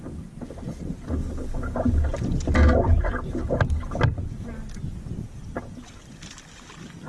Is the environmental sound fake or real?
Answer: real